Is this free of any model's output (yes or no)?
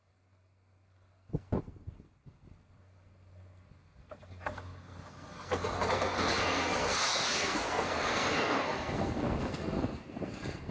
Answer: no